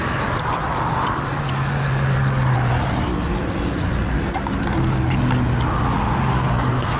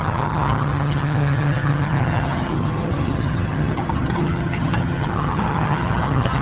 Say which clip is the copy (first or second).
second